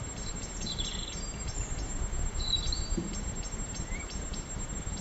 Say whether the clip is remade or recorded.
remade